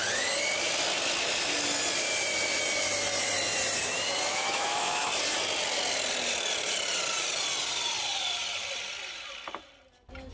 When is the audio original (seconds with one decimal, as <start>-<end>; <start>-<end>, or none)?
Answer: 0.0-4.3; 5.1-10.3